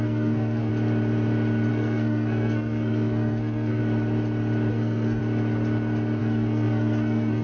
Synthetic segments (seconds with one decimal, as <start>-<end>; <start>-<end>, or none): 0.0-0.7; 1.7-3.8; 4.7-5.2; 6.2-7.4